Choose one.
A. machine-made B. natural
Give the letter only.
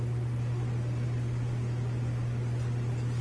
B